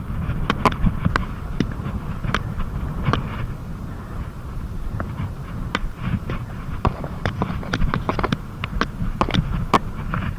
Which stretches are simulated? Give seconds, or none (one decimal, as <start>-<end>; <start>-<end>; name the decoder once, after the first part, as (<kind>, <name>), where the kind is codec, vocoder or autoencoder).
1.2-2.4 (vocoder, BigVGAN v2); 3.6-7.5